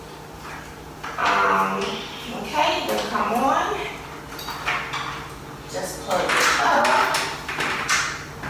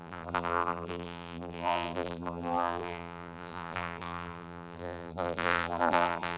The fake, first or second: second